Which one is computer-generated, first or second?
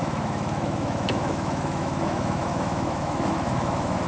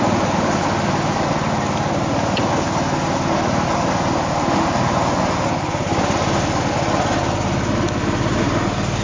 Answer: first